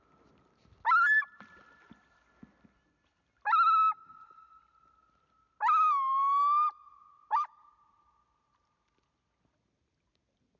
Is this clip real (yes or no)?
yes